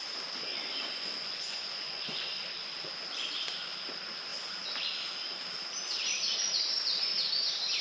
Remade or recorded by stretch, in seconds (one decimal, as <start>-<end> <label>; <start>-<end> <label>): 0.0-0.5 recorded; 0.5-2.4 remade; 2.4-7.8 recorded